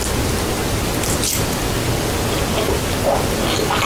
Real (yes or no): yes